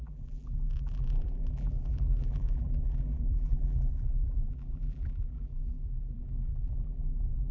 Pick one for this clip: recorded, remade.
remade